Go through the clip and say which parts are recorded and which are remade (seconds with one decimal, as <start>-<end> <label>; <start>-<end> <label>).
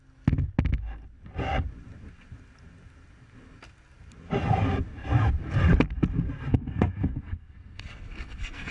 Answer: 0.0-6.5 recorded; 6.5-8.7 remade